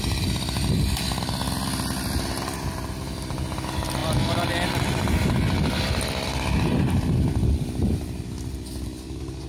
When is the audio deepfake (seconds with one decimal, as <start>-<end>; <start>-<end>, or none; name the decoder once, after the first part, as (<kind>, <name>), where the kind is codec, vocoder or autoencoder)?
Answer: none